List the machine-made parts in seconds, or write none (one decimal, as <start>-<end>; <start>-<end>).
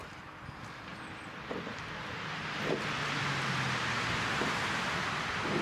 none